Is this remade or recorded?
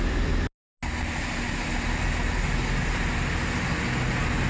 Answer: recorded